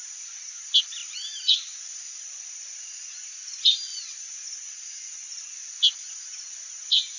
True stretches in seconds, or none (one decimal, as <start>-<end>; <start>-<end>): 0.0-7.2